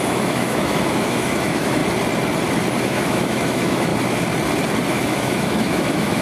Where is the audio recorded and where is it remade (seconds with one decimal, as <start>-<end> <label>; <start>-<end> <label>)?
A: 0.0-1.8 remade; 1.8-2.8 recorded; 2.8-3.9 remade; 3.9-4.9 recorded; 4.9-6.2 remade